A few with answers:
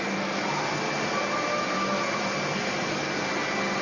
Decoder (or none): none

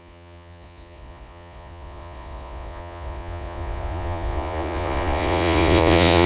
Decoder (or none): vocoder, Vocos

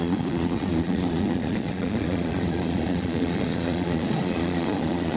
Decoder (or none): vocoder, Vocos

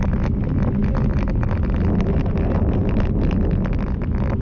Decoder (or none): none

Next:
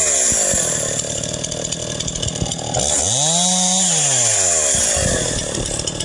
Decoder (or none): none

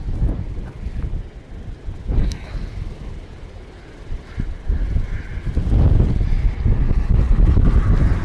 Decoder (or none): none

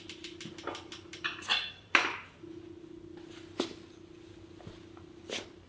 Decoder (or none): none